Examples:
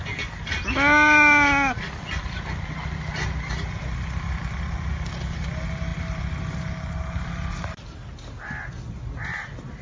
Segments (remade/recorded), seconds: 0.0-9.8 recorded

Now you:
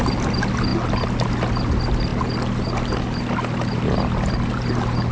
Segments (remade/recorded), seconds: 0.0-5.1 recorded

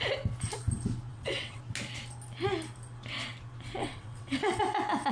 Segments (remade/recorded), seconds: 0.0-1.1 recorded; 1.1-1.6 remade; 1.6-3.8 recorded; 3.8-4.6 remade; 4.6-5.1 recorded